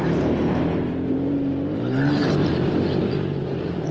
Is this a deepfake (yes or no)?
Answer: yes